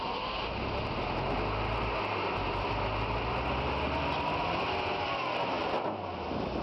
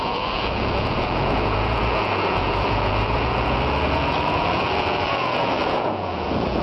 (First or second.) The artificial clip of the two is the second